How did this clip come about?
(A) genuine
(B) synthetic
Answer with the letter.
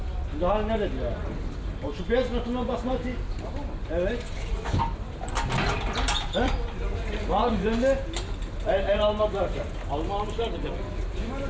A